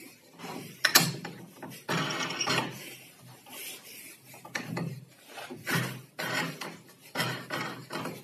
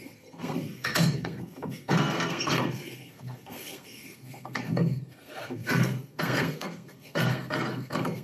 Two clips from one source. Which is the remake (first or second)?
second